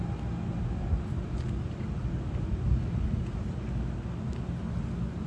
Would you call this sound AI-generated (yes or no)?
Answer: no